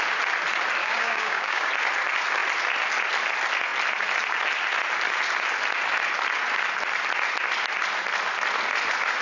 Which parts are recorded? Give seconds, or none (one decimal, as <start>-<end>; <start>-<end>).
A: 0.0-0.8; 1.7-9.2